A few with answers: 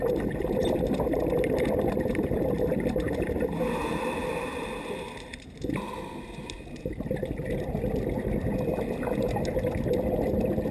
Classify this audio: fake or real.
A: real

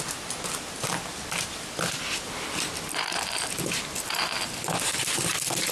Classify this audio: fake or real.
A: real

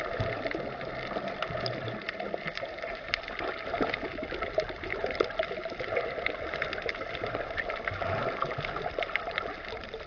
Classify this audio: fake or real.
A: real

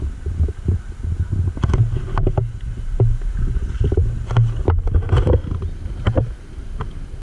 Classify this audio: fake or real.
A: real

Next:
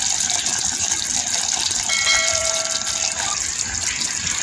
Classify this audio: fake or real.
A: fake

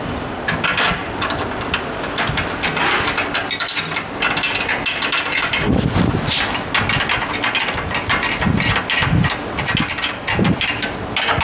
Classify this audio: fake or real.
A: real